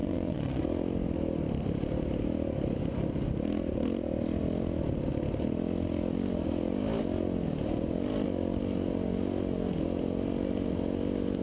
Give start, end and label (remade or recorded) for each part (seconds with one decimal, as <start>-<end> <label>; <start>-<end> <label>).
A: 0.0-0.6 remade; 0.6-11.4 recorded